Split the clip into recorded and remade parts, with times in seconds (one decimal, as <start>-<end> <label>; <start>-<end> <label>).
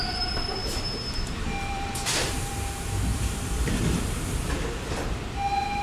0.0-0.6 recorded; 0.6-2.5 remade; 2.5-3.1 recorded; 3.1-4.0 remade; 4.0-5.8 recorded